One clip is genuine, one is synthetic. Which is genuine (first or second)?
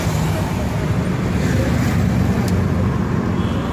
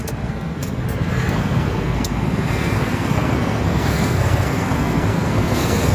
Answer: first